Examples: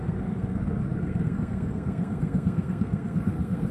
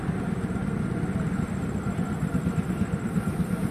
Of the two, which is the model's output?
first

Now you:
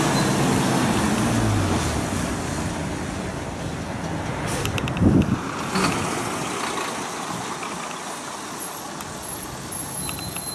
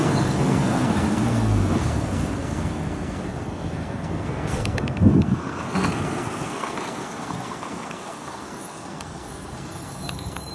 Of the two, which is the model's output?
second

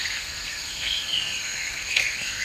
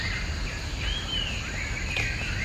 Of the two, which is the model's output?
first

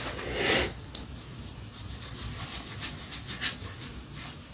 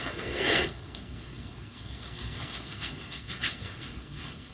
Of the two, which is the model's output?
second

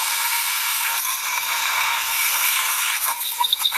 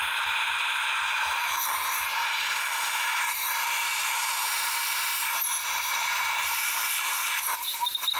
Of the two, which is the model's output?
first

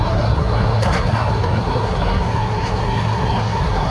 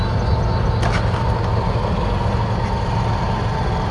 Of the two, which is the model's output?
first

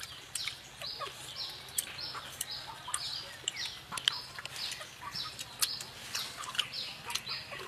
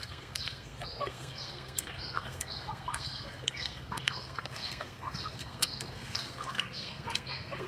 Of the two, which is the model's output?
second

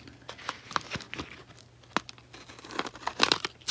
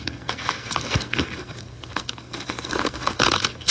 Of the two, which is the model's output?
second